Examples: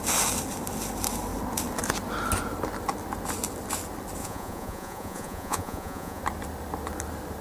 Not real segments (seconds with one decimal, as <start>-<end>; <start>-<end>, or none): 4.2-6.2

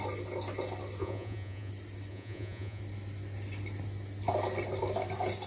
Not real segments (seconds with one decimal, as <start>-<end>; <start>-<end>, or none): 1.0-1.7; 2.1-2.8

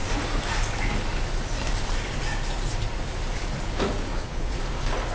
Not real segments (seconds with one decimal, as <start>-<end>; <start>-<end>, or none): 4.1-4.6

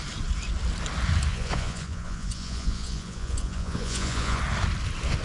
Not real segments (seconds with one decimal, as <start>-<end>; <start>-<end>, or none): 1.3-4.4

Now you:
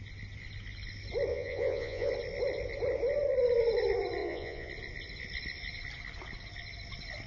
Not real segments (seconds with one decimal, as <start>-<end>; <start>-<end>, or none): 1.3-2.1; 4.2-4.7

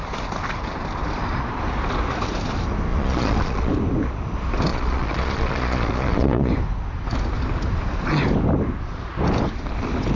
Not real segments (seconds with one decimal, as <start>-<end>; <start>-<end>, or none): 2.9-3.7; 4.7-6.5